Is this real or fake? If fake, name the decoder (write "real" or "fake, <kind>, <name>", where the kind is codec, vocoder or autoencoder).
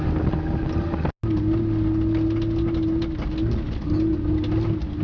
real